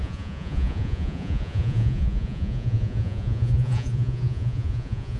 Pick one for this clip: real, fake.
fake